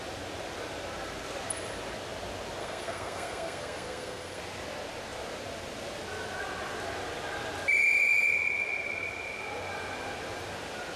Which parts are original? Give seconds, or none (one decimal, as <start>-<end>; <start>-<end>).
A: 0.0-2.6; 4.4-11.0